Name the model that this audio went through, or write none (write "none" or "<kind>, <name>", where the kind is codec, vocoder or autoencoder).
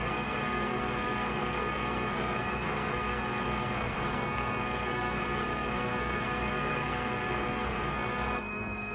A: codec, SNAC